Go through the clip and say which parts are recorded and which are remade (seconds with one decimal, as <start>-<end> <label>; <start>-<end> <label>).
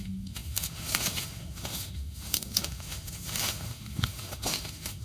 0.0-5.0 remade